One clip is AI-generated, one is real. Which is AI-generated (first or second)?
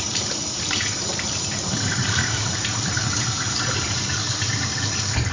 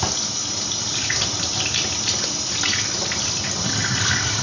first